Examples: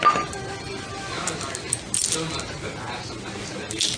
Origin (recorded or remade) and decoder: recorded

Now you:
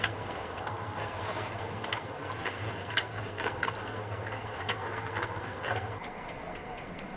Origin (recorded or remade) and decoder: remade, codec, SNAC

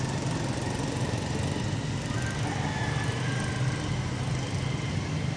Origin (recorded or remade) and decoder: recorded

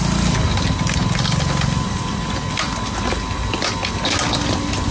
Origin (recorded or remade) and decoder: recorded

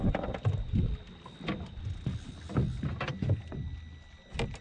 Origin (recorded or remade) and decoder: recorded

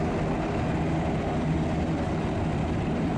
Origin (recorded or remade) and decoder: recorded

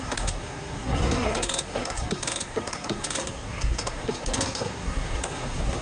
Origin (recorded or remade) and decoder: remade, codec, SNAC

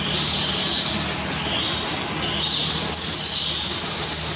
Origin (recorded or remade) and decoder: recorded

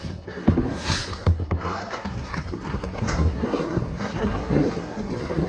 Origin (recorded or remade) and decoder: remade, codec, SNAC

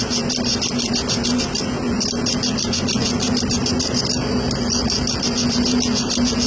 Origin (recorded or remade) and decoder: recorded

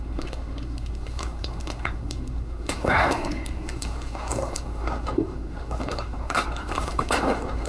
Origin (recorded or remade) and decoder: remade, codec, SNAC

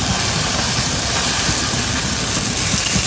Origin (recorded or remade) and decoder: recorded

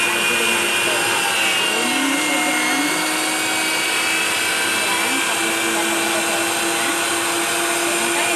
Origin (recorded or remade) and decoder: recorded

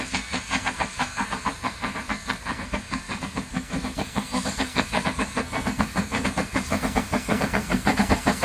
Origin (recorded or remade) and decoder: remade, codec, SNAC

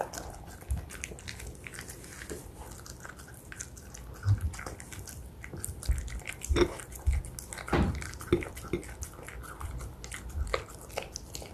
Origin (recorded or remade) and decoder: recorded